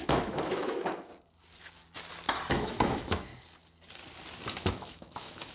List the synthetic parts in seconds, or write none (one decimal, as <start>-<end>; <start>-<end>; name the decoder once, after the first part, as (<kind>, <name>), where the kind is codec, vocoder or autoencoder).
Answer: 0.0-1.1 (autoencoder, DAC-VAE); 2.5-3.3; 4.7-5.5

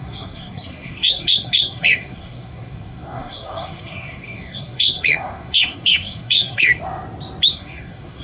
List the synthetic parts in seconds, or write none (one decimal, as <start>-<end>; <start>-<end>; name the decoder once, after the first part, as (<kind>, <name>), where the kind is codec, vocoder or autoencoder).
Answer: 0.0-6.7 (codec, SNAC); 7.5-8.2

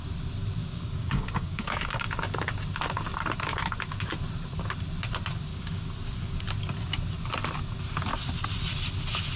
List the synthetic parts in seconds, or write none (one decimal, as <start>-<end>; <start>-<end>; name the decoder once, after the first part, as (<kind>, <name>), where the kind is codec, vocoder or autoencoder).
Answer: 0.6-2.1 (codec, DAC); 5.5-6.4

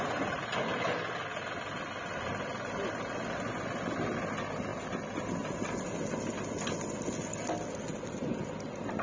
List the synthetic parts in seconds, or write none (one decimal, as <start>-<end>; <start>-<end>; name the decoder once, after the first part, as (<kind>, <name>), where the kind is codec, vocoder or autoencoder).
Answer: none